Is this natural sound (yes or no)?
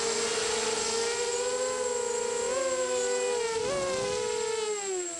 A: yes